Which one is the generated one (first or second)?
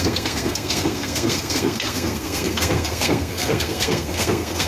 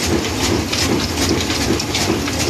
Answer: first